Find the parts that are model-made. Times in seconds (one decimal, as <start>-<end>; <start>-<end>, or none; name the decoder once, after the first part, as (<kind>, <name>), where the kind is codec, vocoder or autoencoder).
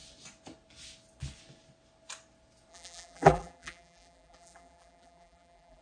2.7-5.8 (vocoder, BigVGAN v2)